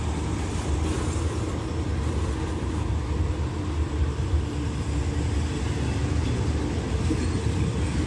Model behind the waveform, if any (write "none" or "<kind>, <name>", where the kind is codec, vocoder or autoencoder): none